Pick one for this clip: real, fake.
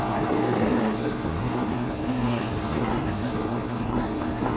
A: fake